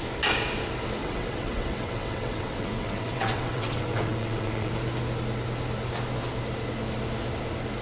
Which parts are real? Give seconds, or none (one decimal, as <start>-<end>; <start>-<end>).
0.0-1.0; 4.7-7.8